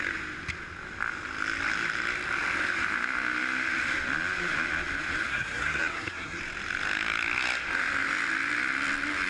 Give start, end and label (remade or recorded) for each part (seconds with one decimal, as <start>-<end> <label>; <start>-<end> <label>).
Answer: 0.0-5.3 recorded; 5.3-6.4 remade; 6.4-9.3 recorded